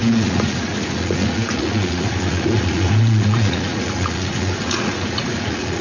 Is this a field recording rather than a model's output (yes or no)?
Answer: no